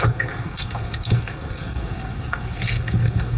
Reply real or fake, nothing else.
fake